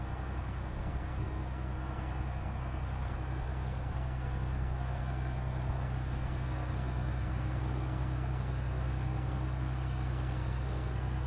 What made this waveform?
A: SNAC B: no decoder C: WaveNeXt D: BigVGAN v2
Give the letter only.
A